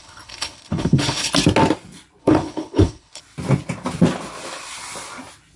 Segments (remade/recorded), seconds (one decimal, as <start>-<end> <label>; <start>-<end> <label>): 0.0-1.3 remade; 1.3-2.2 recorded; 2.2-3.2 remade; 3.2-5.6 recorded